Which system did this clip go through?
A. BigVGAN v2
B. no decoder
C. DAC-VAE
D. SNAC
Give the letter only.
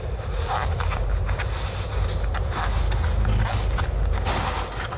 B